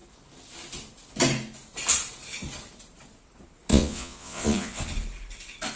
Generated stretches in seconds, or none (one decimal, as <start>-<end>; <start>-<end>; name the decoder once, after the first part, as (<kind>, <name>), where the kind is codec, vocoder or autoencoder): 3.7-4.8 (vocoder, Vocos)